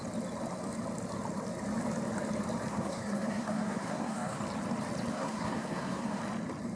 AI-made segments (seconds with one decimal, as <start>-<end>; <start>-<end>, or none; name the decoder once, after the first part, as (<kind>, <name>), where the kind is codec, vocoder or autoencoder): 2.7-4.4 (codec, SNAC); 5.1-6.2